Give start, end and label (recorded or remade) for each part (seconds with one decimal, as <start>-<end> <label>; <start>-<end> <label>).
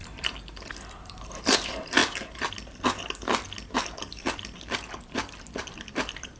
0.0-2.0 remade; 2.0-5.6 recorded; 5.6-6.4 remade